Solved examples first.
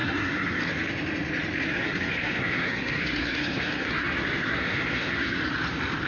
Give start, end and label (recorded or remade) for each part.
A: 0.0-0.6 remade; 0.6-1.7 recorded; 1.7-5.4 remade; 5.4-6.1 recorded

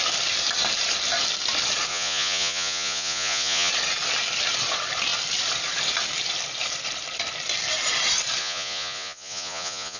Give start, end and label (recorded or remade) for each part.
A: 0.0-1.9 recorded; 1.9-3.7 remade; 3.7-8.4 recorded; 8.4-10.0 remade

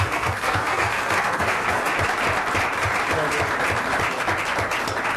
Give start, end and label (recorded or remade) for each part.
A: 0.0-1.8 remade; 1.8-5.2 recorded

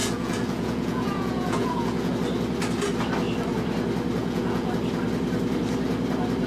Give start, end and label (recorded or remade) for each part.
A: 0.0-2.1 remade; 2.1-4.2 recorded; 4.2-4.7 remade; 4.7-6.5 recorded

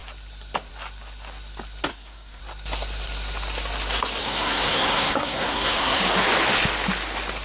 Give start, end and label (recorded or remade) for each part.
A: 0.0-1.9 recorded; 1.9-2.4 remade; 2.4-4.2 recorded; 4.2-6.0 remade; 6.0-7.4 recorded

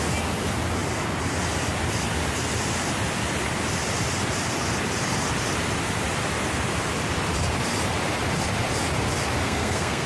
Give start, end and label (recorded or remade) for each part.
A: 0.0-9.4 recorded; 9.4-10.1 remade